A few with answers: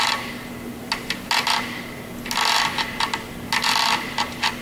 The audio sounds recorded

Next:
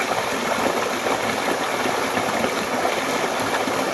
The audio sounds recorded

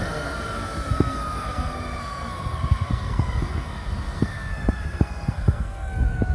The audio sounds remade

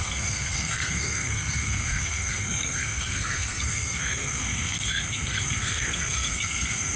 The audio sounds remade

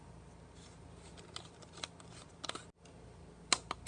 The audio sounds recorded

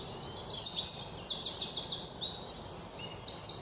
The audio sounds recorded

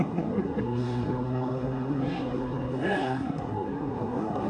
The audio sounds remade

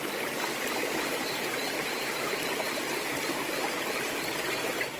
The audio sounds recorded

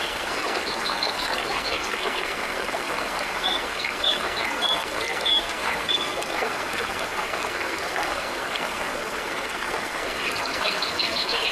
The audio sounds remade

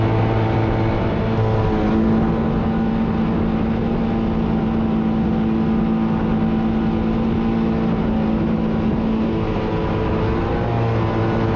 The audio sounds recorded